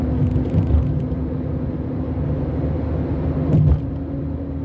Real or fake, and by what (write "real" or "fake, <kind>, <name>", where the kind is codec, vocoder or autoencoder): real